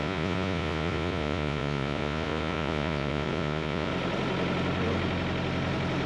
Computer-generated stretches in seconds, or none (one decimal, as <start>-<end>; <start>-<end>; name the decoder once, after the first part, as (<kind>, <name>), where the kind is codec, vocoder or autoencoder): 0.0-3.9 (vocoder, Vocos)